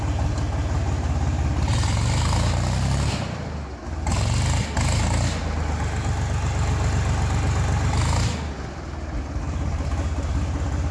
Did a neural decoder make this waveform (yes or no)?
no